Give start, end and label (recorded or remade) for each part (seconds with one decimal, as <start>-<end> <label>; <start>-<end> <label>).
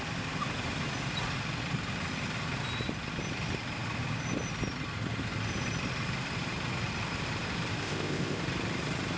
0.0-7.8 recorded; 7.8-8.4 remade; 8.4-9.2 recorded